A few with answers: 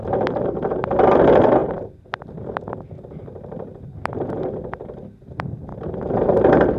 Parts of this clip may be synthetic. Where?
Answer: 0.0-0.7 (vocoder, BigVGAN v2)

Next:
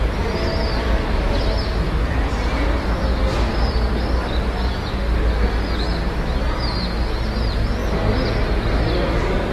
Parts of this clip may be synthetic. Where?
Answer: none

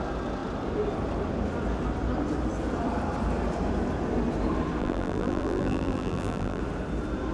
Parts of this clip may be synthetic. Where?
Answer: 4.8-6.6 (vocoder, BigVGAN v2)

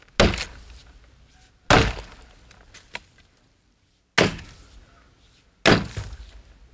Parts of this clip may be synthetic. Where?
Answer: none

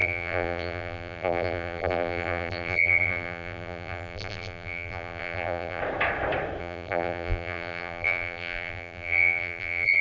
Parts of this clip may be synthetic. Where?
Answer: 0.0-5.8 (vocoder, BigVGAN v2); 6.6-10.0

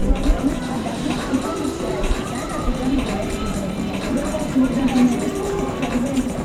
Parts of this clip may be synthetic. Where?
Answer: 0.0-6.4 (vocoder, BigVGAN v2)